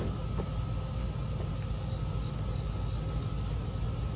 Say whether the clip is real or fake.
real